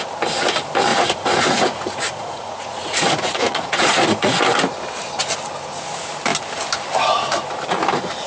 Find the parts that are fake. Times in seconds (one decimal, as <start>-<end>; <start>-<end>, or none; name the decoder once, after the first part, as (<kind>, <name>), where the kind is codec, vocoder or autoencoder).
0.9-4.3 (vocoder, Vocos)